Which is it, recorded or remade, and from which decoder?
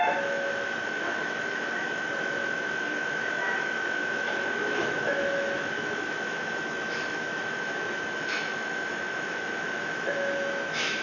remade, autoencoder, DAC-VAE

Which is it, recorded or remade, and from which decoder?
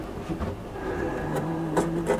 recorded